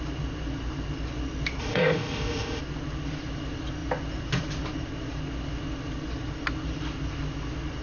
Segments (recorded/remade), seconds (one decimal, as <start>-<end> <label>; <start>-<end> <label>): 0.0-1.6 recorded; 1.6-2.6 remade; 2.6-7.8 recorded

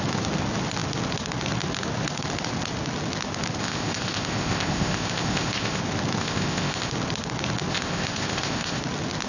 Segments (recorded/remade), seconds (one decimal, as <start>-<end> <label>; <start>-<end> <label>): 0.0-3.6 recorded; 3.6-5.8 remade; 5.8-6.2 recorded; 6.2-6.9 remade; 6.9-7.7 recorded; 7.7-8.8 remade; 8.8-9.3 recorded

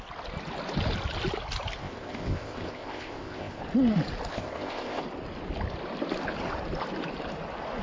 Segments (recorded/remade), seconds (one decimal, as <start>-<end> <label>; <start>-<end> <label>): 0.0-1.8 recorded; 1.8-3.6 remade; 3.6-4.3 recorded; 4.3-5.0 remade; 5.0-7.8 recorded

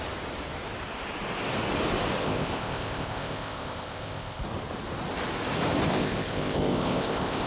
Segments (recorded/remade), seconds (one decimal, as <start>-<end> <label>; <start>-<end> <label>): 0.0-2.2 recorded; 2.2-4.4 remade; 4.4-5.9 recorded; 5.9-7.5 remade

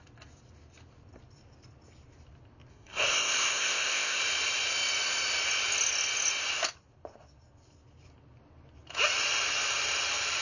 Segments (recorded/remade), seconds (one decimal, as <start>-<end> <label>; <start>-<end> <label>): 0.0-2.7 recorded; 2.7-4.2 remade; 4.2-10.4 recorded